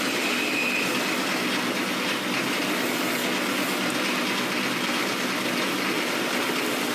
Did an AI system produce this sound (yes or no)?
no